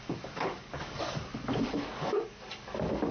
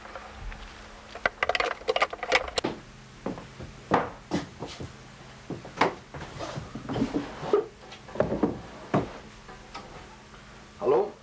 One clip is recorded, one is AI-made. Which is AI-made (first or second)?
first